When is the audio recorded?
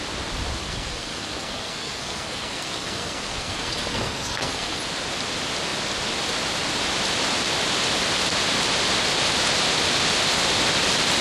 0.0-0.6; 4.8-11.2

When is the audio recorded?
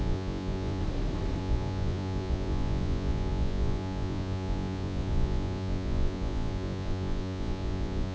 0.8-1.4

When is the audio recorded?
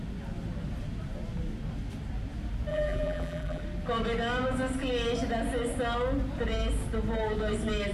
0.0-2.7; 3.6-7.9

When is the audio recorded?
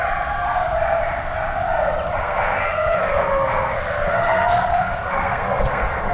0.0-2.2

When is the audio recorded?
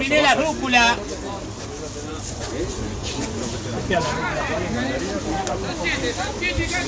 0.0-2.1; 4.6-6.9